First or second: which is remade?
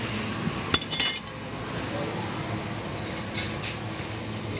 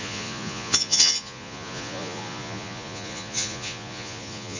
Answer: second